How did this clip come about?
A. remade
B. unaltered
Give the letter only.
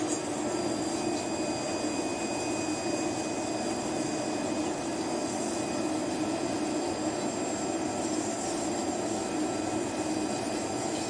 B